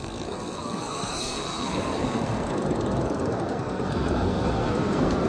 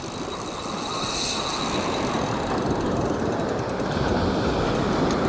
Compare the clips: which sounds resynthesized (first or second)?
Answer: first